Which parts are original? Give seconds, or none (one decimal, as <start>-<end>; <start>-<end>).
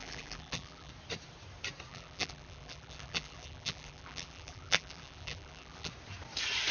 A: 0.9-1.9; 5.9-6.7